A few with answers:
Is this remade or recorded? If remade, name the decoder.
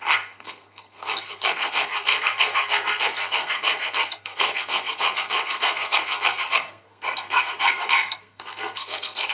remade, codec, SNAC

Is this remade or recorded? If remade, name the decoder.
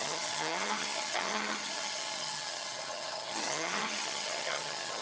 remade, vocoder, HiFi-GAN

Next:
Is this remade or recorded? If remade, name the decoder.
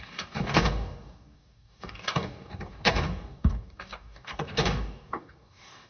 remade, codec, DAC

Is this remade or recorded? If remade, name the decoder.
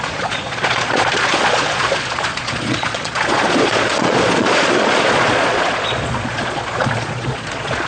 remade, vocoder, Vocos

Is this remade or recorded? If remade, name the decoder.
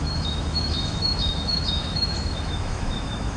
remade, autoencoder, DAC-VAE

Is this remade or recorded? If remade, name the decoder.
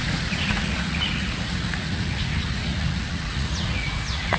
remade, vocoder, Vocos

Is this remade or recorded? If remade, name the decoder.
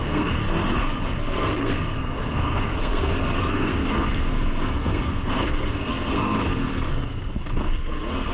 remade, codec, SNAC